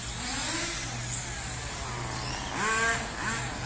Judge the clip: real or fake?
real